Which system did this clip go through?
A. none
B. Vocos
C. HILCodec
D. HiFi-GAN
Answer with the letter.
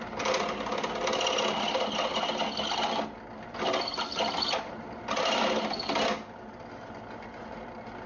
A